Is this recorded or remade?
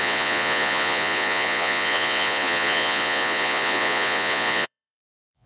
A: remade